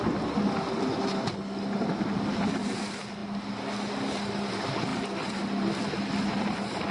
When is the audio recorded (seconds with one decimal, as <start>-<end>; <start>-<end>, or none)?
0.0-6.9